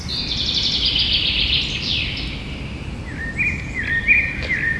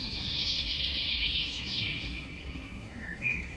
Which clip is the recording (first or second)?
first